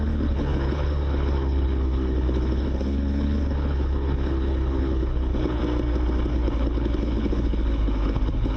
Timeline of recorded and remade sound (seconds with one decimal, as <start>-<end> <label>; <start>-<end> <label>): 0.0-5.6 remade; 5.6-6.3 recorded; 6.3-8.6 remade